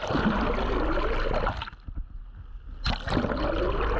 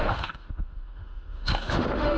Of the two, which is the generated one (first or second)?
second